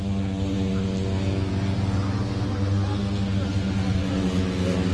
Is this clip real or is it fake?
real